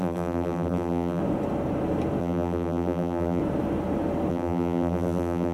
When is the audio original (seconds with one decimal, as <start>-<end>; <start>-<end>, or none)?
1.2-2.2; 3.4-4.3